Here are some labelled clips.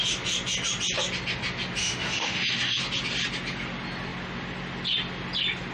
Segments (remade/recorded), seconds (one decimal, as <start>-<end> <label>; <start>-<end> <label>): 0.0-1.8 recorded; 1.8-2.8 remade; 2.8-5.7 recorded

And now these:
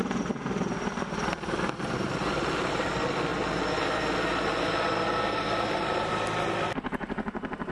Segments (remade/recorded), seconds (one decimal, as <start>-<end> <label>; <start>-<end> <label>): 0.0-7.7 recorded

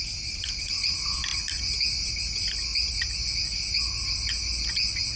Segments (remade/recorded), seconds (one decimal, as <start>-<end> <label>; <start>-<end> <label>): 0.0-5.2 recorded